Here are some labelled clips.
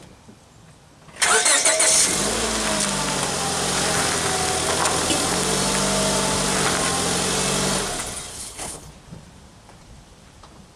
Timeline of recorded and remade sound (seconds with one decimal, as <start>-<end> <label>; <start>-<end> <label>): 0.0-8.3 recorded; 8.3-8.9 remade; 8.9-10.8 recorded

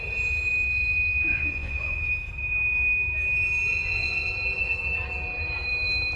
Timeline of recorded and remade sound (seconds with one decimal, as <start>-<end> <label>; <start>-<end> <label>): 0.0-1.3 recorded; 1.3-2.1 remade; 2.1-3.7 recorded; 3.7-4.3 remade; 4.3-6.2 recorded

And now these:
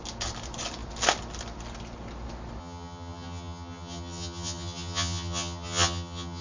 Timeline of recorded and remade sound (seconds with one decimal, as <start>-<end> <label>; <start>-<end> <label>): 0.0-2.6 recorded; 2.6-6.4 remade

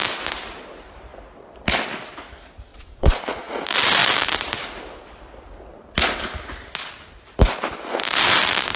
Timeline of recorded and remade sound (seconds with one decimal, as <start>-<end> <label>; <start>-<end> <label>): 0.0-2.7 recorded; 2.7-3.5 remade; 3.5-8.8 recorded

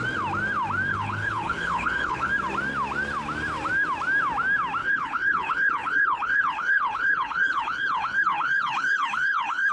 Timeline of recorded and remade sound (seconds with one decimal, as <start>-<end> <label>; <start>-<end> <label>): 0.0-0.9 recorded; 0.9-2.3 remade; 2.3-4.8 recorded; 4.8-9.7 remade

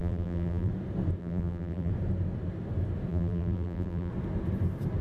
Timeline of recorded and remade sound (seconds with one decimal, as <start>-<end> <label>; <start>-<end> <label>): 0.0-0.7 remade; 0.7-1.2 recorded; 1.2-1.9 remade; 1.9-3.1 recorded; 3.1-4.1 remade; 4.1-5.0 recorded

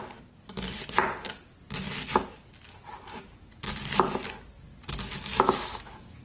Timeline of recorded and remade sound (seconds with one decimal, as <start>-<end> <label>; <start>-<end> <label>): 0.0-5.3 recorded; 5.3-6.2 remade